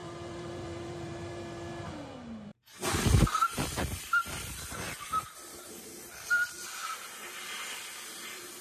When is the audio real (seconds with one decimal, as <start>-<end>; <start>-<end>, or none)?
1.4-6.8; 7.5-8.6